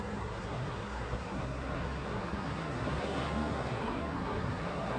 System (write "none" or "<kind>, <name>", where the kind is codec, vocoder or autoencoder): codec, SNAC